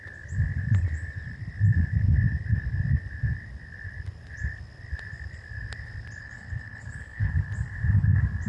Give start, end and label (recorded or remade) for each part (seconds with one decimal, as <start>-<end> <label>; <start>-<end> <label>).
0.0-6.2 recorded; 6.2-7.3 remade; 7.3-8.5 recorded